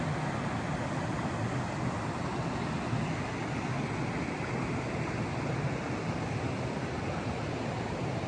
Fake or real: real